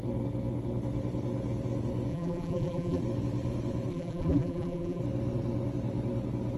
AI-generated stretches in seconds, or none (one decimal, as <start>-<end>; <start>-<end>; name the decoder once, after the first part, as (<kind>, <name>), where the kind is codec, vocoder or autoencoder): 2.1-3.0 (vocoder, BigVGAN v2); 3.9-5.0